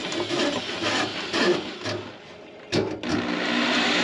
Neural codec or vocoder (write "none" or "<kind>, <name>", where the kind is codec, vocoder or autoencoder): none